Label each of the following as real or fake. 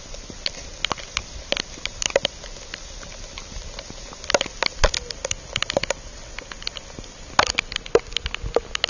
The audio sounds real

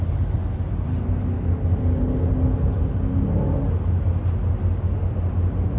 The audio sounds real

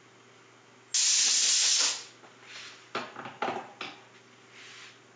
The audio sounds real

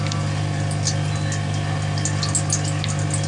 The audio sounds real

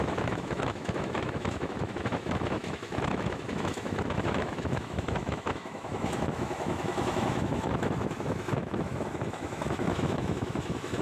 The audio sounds fake